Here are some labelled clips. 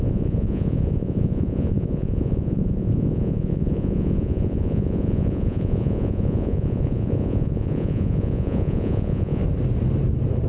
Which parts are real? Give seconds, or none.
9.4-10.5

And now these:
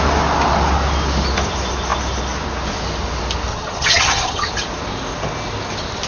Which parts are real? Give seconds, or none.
0.0-3.5; 4.5-6.1

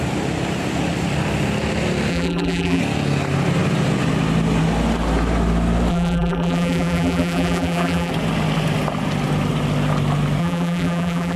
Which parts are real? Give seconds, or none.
0.0-2.1; 2.8-5.9; 8.1-10.4